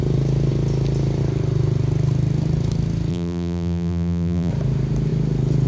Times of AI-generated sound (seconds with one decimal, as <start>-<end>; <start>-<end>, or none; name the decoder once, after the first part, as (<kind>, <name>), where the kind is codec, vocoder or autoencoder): 3.1-4.5 (vocoder, BigVGAN v2)